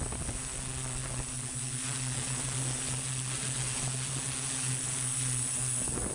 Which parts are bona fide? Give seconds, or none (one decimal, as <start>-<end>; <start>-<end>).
0.0-6.1